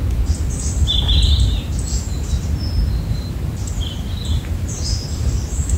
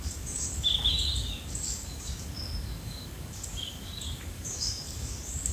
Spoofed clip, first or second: second